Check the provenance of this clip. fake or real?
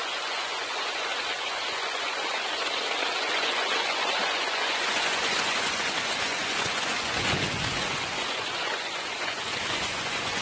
fake